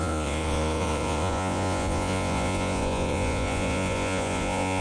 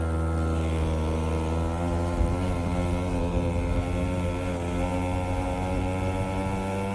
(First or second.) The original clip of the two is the second